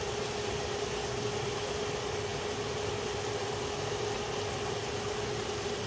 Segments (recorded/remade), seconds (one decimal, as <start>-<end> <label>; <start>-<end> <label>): 0.0-5.9 recorded